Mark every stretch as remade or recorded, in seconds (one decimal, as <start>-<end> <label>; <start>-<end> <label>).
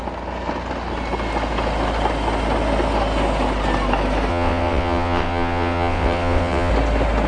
0.0-4.3 recorded; 4.3-6.7 remade; 6.7-7.3 recorded